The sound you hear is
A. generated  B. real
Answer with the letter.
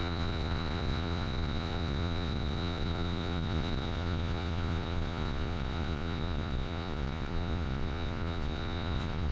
A